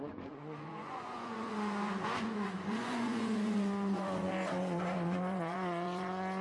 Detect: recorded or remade remade